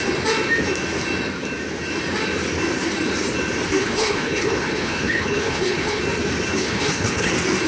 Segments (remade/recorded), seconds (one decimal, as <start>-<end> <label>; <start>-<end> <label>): 0.0-3.8 recorded; 3.8-6.0 remade; 6.0-6.5 recorded; 6.5-7.3 remade; 7.3-7.7 recorded